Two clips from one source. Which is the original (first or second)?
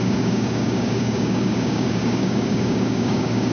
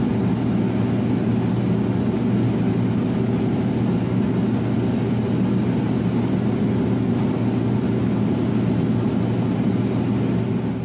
second